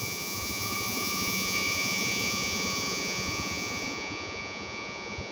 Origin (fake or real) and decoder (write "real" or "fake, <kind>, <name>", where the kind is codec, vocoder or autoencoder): fake, vocoder, Vocos